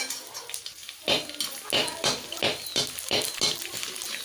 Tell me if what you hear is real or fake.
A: real